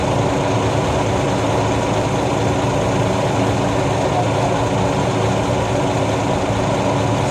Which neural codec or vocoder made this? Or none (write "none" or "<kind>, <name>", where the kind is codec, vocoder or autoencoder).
none